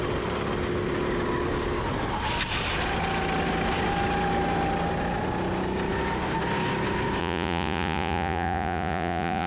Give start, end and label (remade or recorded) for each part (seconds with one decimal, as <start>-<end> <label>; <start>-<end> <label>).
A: 0.0-7.2 recorded; 7.2-9.5 remade